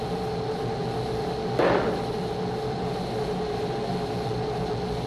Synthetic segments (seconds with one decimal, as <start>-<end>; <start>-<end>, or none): none